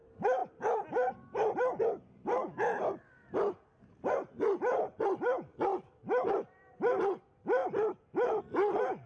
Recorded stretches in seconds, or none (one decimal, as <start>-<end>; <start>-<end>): 5.7-6.3